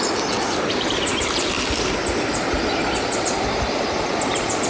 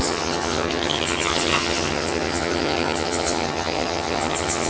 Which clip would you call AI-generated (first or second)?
second